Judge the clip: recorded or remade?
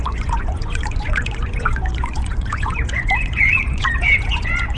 remade